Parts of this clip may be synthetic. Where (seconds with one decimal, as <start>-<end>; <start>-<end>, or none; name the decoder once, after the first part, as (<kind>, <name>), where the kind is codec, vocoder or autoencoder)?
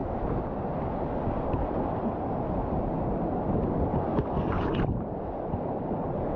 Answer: 4.1-4.7 (vocoder, Vocos)